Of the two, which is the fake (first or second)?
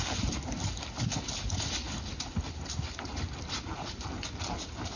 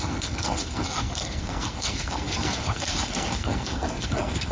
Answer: second